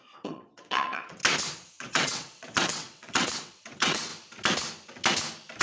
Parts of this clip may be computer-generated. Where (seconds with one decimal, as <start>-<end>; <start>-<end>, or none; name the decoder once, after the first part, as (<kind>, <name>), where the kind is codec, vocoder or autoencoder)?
0.0-1.2 (vocoder, WaveNeXt); 1.8-4.1